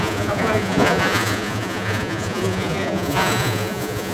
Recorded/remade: remade